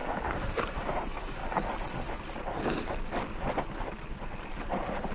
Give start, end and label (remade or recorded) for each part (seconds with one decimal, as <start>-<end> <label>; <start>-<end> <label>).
0.0-1.4 remade; 1.4-4.5 recorded; 4.5-5.1 remade